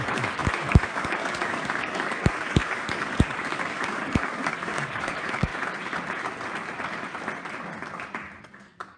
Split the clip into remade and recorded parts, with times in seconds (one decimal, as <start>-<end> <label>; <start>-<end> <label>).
0.0-5.5 remade; 5.5-8.4 recorded; 8.4-9.0 remade